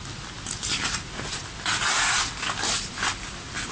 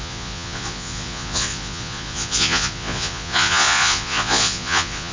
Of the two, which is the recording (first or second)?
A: first